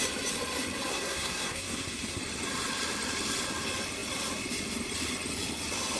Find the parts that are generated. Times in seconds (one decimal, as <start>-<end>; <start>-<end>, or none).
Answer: 0.9-2.2

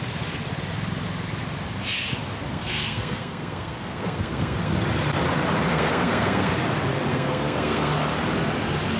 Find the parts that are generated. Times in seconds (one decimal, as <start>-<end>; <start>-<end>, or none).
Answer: 2.5-4.7; 5.7-6.5; 7.1-7.9

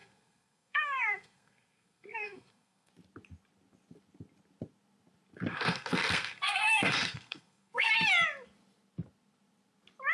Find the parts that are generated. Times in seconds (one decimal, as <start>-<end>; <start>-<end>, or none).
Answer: 0.0-2.9; 5.5-7.9